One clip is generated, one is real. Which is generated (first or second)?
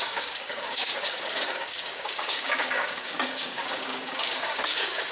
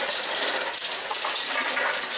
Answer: first